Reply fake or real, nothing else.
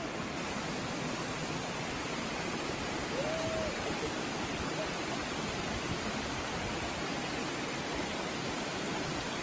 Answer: real